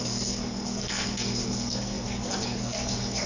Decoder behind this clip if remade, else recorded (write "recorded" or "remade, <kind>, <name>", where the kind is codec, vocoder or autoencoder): remade, codec, SNAC